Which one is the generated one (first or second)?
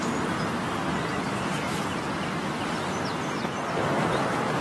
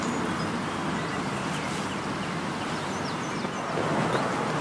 first